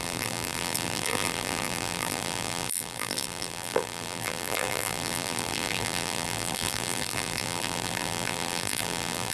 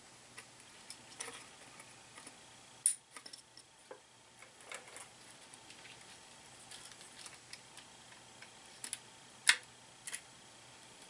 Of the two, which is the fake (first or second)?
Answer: first